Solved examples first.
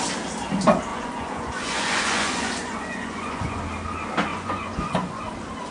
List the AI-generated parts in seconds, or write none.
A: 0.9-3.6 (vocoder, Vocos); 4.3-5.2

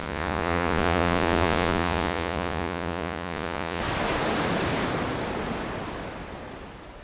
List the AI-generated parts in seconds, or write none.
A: 0.0-3.8 (vocoder, Vocos)

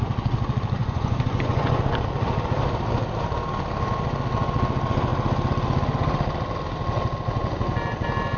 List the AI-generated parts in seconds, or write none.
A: 0.8-1.8 (vocoder, Vocos)